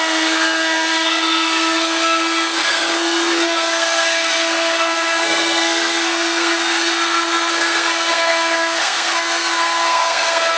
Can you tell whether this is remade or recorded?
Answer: remade